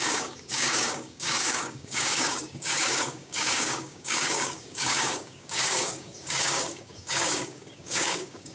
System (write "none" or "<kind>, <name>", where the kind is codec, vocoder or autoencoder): codec, DAC